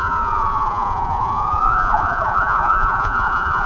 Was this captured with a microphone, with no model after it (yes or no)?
no